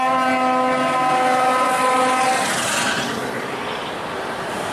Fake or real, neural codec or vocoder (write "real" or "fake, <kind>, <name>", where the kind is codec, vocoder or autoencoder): real